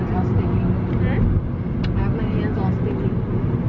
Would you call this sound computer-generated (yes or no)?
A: no